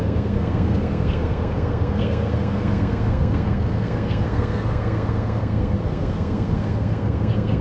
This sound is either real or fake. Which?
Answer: fake